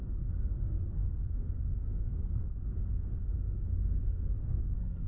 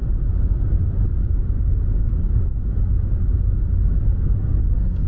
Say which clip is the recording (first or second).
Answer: second